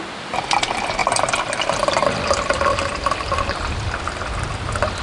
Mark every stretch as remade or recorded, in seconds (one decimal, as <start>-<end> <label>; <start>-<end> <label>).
0.0-1.0 recorded; 1.0-4.0 remade; 4.0-5.0 recorded